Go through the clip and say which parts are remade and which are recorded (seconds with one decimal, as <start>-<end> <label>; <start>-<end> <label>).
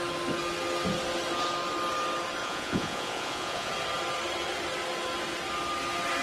0.0-2.4 recorded; 2.4-3.7 remade; 3.7-6.2 recorded